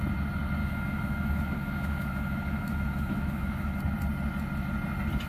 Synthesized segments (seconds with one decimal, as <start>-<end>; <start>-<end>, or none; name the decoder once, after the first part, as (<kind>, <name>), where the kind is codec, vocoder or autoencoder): 0.6-3.8 (autoencoder, DAC-VAE)